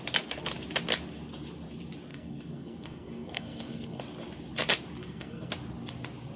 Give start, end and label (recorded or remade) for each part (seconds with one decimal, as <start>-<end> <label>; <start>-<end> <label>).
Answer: 0.0-2.1 recorded; 2.1-4.0 remade; 4.0-5.0 recorded; 5.0-5.5 remade; 5.5-6.4 recorded